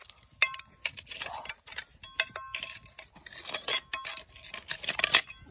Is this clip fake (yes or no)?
no